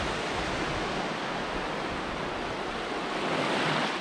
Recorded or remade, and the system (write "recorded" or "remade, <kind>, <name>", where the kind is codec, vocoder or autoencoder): recorded